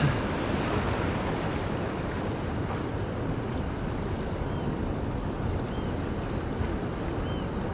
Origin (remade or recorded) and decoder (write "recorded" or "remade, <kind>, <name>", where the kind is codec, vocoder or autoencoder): recorded